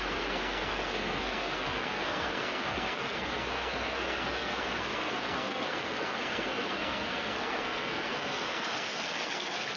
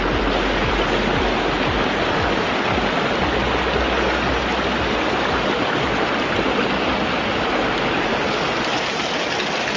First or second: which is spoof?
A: first